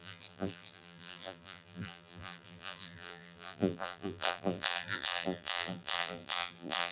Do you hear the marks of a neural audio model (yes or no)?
yes